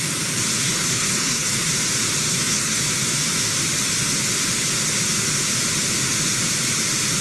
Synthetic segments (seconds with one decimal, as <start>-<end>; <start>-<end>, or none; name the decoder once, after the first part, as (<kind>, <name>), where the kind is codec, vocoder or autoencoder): 0.6-1.7 (codec, HILCodec); 2.3-2.8